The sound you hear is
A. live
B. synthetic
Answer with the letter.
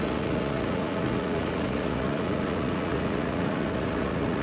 B